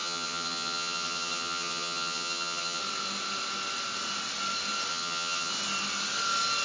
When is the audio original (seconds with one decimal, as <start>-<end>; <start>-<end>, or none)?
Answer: 2.8-4.9; 5.5-6.6